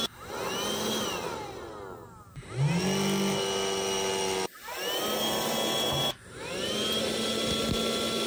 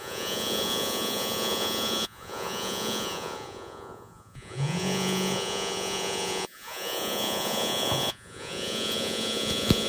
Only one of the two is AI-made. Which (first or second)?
second